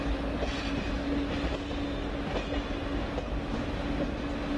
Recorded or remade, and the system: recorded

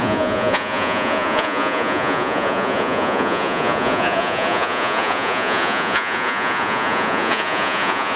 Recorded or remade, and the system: remade, vocoder, Vocos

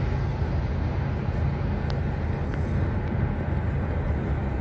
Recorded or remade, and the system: recorded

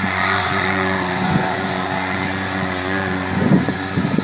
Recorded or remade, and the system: remade, vocoder, Vocos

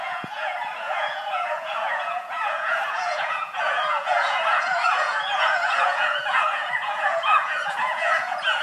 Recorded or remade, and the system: remade, vocoder, Vocos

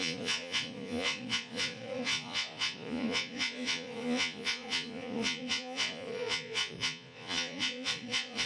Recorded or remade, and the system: remade, vocoder, Vocos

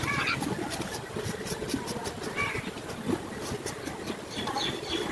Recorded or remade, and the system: recorded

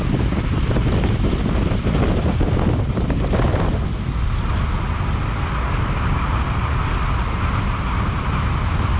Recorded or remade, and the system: recorded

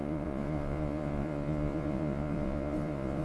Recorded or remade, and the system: remade, vocoder, Vocos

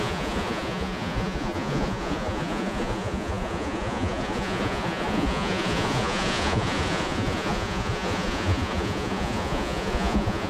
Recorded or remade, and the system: remade, vocoder, Vocos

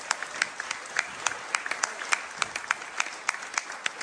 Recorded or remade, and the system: recorded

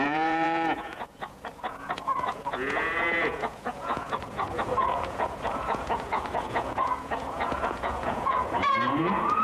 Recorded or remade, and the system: remade, vocoder, Vocos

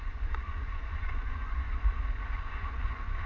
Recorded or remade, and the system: remade, vocoder, Vocos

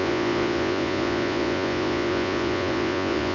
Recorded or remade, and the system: remade, vocoder, Vocos